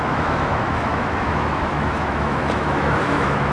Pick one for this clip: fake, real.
fake